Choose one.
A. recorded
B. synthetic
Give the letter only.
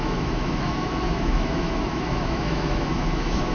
B